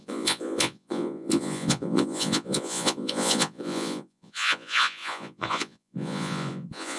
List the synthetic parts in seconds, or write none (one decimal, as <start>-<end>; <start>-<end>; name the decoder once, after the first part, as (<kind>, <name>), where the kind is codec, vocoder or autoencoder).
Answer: 0.0-7.0 (vocoder, Vocos)